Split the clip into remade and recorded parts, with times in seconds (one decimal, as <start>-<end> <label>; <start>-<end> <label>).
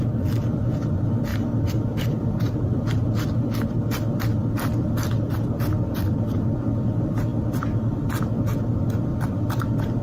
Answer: 0.0-1.3 recorded; 1.3-2.6 remade; 2.6-9.1 recorded; 9.1-10.0 remade